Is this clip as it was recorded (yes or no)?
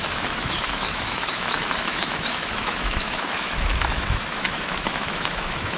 no